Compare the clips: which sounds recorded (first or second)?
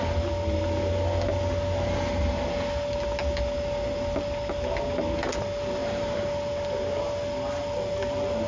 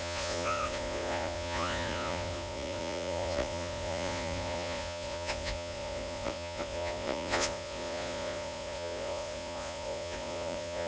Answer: first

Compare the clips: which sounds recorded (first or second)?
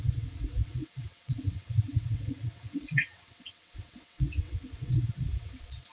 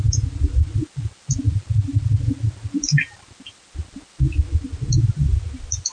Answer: second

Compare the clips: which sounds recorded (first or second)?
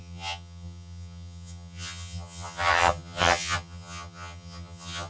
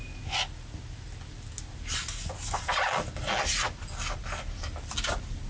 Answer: second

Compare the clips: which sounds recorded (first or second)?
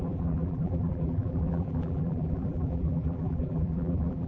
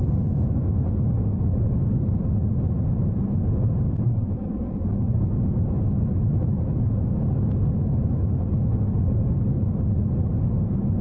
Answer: second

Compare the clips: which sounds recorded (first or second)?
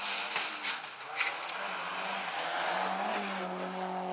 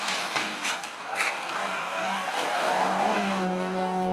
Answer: first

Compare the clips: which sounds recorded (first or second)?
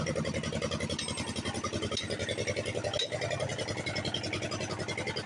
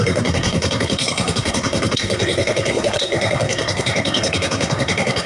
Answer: first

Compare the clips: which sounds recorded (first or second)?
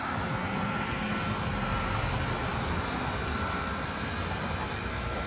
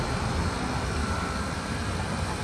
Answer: first